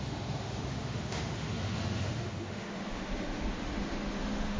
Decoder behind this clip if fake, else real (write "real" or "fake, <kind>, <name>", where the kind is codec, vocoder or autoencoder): fake, autoencoder, DAC-VAE